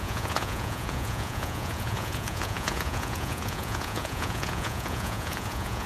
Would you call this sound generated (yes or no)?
yes